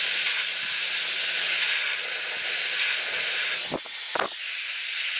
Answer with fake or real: real